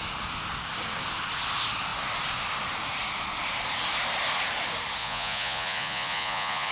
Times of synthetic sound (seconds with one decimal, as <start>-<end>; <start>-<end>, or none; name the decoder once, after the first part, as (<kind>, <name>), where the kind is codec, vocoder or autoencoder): 5.0-6.7 (vocoder, Vocos)